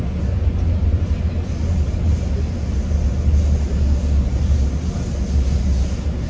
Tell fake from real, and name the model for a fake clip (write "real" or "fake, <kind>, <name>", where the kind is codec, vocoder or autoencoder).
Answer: real